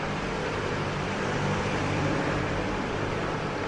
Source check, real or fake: fake